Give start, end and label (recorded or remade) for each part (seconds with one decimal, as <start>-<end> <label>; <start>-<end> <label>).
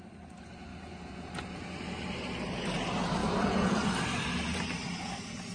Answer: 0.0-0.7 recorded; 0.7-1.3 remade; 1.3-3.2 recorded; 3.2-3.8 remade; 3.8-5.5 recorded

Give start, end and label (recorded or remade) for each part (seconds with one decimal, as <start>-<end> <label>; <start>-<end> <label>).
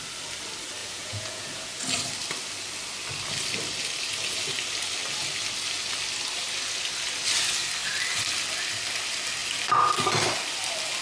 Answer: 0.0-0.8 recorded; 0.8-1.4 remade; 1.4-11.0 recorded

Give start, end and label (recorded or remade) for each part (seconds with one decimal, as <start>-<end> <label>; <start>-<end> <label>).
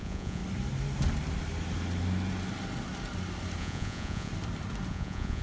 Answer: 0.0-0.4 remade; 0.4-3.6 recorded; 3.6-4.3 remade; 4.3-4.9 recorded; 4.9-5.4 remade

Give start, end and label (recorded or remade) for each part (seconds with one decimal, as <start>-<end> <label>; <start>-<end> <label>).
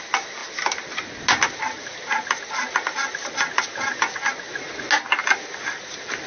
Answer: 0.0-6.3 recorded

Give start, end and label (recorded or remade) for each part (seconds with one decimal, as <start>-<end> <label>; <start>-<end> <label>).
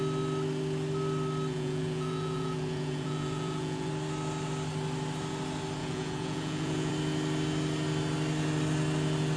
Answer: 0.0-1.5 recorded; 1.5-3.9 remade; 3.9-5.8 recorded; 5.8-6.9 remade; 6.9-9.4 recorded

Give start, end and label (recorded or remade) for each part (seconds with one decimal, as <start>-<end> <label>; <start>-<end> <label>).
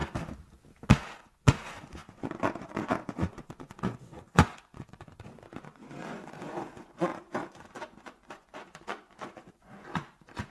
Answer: 0.0-0.9 recorded; 0.9-10.5 remade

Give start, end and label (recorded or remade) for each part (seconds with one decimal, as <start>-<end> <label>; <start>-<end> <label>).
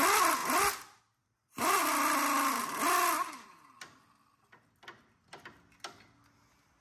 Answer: 0.0-6.8 recorded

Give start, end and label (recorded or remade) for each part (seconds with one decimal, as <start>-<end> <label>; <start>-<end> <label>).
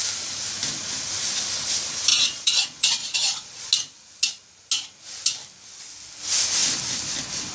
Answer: 0.0-2.1 recorded; 2.1-3.7 remade; 3.7-7.5 recorded